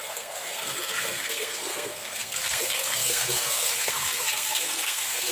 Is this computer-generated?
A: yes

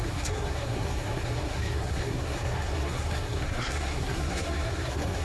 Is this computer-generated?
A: yes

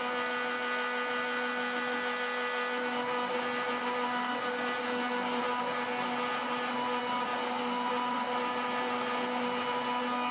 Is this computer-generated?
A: no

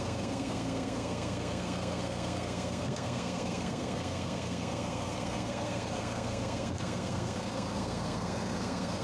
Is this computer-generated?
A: yes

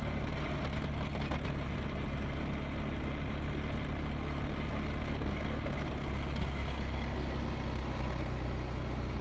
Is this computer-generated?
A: no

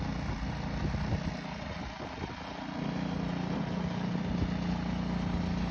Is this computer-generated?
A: no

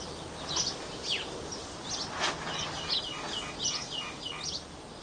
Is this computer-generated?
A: no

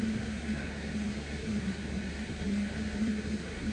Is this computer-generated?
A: yes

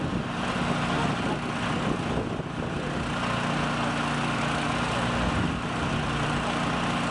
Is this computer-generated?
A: no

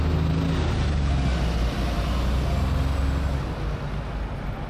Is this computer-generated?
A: no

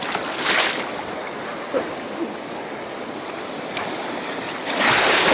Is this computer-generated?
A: no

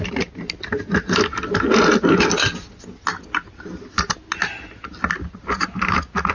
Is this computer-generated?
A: no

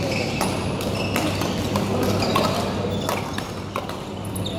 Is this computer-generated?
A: no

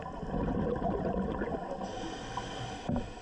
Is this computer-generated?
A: no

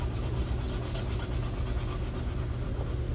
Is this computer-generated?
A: no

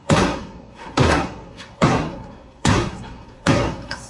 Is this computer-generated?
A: yes